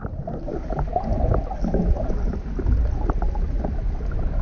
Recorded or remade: recorded